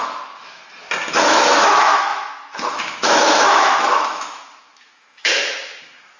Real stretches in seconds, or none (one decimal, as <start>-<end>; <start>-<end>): 0.6-1.2